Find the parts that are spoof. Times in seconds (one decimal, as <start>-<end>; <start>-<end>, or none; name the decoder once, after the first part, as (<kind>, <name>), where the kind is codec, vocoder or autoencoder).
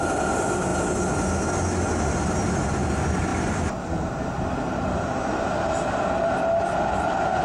none